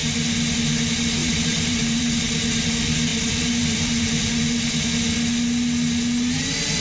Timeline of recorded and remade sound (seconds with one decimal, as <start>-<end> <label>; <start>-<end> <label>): 0.0-1.2 recorded; 1.2-2.2 remade; 2.2-3.1 recorded; 3.1-4.4 remade; 4.4-6.8 recorded